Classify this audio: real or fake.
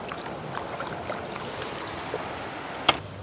real